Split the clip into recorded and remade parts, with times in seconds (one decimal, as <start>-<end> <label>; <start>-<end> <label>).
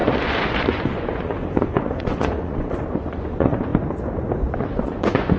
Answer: 0.0-3.7 remade; 3.7-4.6 recorded; 4.6-5.4 remade